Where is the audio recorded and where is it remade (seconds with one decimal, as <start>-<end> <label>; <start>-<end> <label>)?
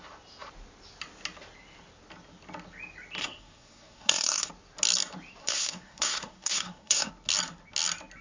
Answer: 0.0-3.2 recorded; 3.2-4.5 remade; 4.5-5.4 recorded; 5.4-7.1 remade; 7.1-8.2 recorded